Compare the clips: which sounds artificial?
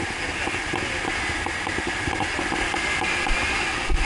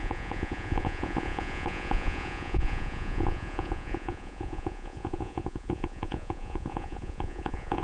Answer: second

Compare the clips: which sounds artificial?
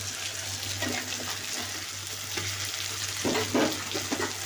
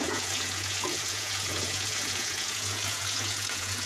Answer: second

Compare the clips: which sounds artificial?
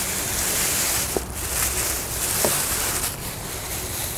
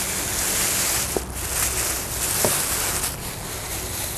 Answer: first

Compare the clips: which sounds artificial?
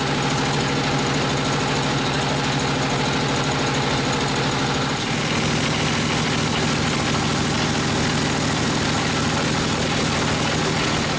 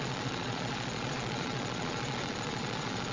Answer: second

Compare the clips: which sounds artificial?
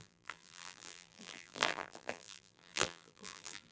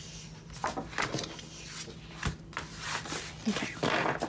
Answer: first